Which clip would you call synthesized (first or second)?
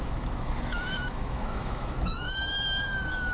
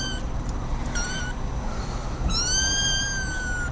first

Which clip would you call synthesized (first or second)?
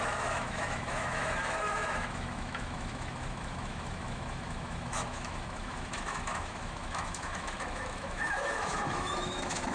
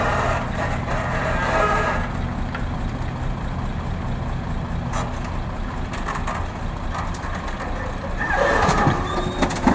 first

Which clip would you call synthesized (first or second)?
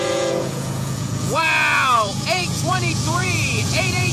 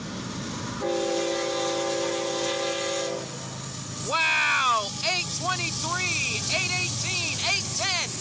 first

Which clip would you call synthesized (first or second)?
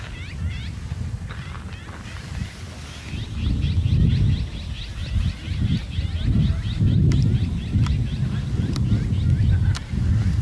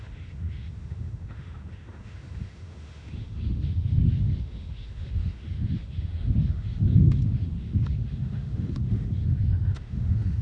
second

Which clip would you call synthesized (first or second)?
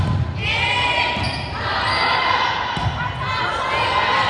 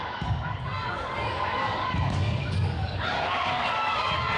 second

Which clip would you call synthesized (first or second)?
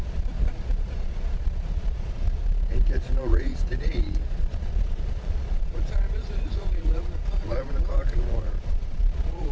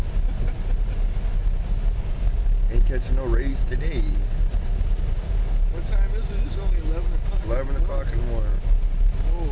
first